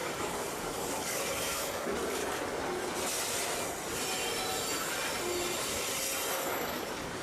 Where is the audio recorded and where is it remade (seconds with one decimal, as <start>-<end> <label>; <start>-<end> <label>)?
0.0-2.2 remade; 2.2-6.3 recorded; 6.3-7.2 remade